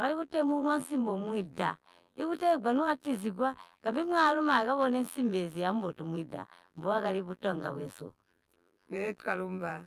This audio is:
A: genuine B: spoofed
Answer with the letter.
B